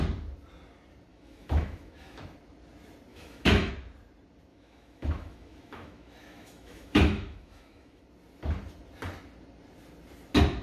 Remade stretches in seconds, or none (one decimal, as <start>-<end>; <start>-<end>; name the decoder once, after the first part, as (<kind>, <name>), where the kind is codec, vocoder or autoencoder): 1.1-2.2 (autoencoder, DAC-VAE); 3.1-3.7; 4.5-8.0